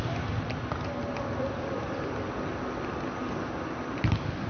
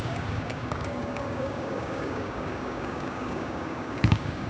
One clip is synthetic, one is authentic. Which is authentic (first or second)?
first